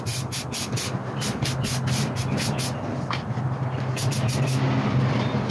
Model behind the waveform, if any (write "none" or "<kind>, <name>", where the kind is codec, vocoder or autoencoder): none